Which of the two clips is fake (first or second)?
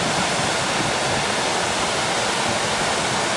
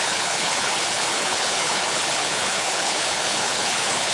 second